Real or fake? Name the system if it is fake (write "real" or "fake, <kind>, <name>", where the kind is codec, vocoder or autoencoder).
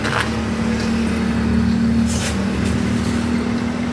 real